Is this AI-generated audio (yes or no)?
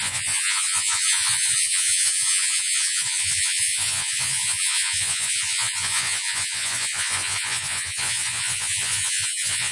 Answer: yes